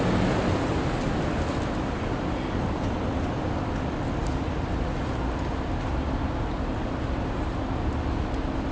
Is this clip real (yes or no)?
yes